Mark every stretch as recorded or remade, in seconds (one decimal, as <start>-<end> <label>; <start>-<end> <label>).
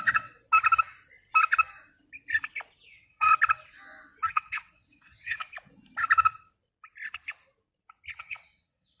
0.0-0.4 remade; 0.4-2.9 recorded; 2.9-3.3 remade; 3.3-4.3 recorded; 4.3-5.4 remade; 5.4-8.2 recorded; 8.2-9.0 remade